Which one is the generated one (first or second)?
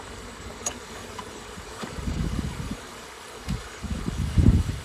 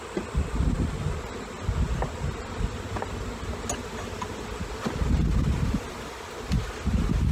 first